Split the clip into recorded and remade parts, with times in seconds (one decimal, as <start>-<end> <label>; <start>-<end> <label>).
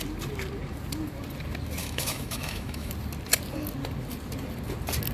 0.0-1.8 recorded; 1.8-2.9 remade; 2.9-5.1 recorded